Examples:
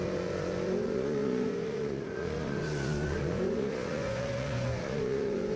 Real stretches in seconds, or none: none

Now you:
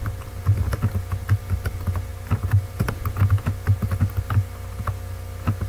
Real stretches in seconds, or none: 0.0-5.7

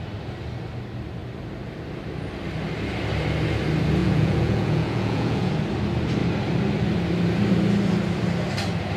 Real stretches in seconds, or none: 0.0-4.0; 5.5-9.0

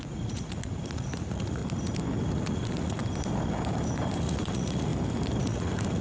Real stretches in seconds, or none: 1.6-2.3; 3.0-4.2; 4.9-5.4

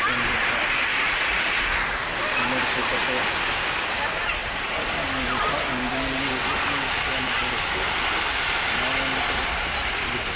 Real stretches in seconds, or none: 0.0-0.9; 2.1-10.4